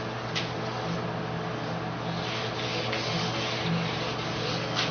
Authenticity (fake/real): real